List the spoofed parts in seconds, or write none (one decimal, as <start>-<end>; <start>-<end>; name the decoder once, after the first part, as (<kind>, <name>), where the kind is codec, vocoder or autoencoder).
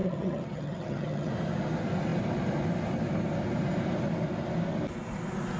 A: 0.0-1.3 (vocoder, HiFi-GAN)